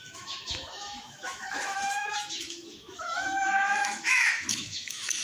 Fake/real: fake